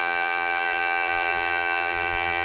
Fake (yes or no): yes